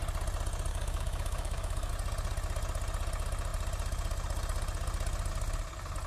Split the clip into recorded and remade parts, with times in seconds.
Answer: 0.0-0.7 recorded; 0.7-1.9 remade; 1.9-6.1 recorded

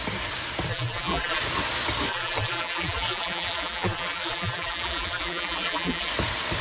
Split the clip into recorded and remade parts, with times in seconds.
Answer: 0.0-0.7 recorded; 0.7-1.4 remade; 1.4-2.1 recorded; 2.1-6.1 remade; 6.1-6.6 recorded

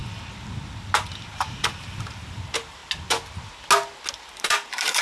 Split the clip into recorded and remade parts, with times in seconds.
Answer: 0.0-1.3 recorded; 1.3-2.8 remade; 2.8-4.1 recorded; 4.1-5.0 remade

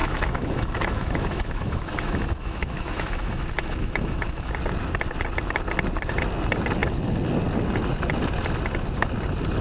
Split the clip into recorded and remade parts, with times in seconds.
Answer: 0.0-4.5 remade; 4.5-9.6 recorded